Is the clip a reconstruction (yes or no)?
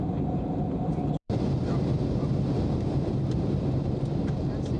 yes